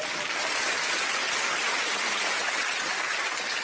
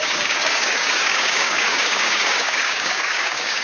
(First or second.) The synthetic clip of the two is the second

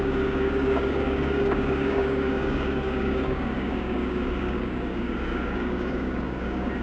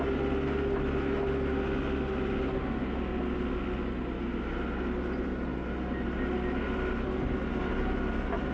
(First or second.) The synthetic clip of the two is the first